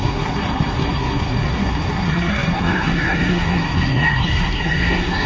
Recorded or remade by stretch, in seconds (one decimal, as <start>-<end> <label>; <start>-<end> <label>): 0.0-5.3 remade